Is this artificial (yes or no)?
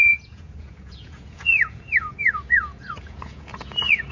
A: yes